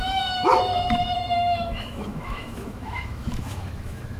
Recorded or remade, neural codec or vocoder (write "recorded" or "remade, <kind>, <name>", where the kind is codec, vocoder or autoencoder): remade, autoencoder, DAC-VAE